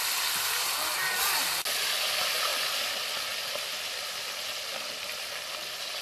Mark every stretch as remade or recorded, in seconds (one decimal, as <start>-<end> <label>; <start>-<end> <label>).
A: 0.0-6.0 recorded